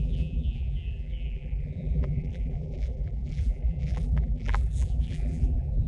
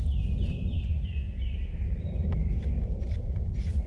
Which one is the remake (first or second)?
first